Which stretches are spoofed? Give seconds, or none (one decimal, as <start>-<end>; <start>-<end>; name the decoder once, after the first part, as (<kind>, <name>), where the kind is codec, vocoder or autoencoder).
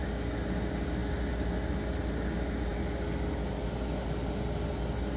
none